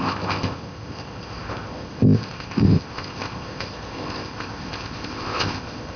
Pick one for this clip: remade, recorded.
remade